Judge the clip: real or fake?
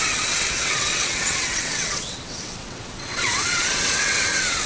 fake